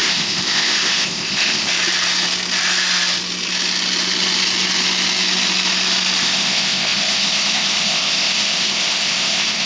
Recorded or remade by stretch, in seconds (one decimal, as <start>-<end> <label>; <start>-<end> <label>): 0.0-1.7 remade; 1.7-6.2 recorded; 6.2-9.7 remade

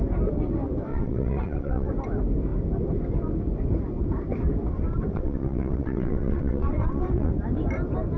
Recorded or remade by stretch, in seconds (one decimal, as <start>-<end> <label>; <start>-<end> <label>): 0.0-0.9 recorded; 0.9-1.9 remade; 1.9-5.1 recorded; 5.1-7.3 remade; 7.3-8.2 recorded

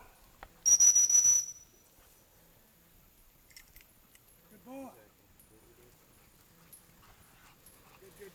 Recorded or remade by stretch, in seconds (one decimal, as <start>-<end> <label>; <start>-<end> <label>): 0.0-8.3 recorded

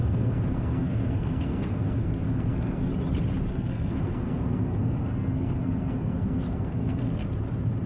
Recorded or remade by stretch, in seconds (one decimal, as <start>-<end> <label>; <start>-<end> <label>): 0.0-2.9 remade; 2.9-3.5 recorded; 3.5-7.2 remade; 7.2-7.9 recorded